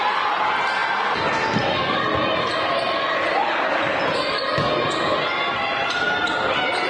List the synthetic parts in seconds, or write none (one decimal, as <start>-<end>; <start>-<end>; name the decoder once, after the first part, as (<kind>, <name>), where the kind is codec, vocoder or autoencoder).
none